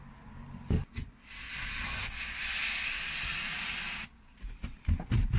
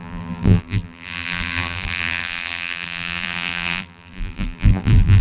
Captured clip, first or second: first